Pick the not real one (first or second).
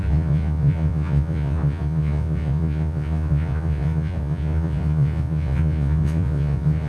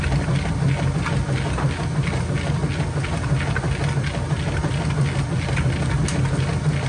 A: first